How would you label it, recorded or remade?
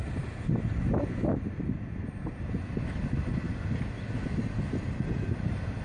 recorded